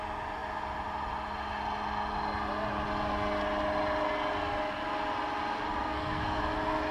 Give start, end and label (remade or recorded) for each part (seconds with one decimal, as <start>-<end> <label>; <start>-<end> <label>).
0.0-5.8 recorded; 5.8-6.4 remade; 6.4-6.9 recorded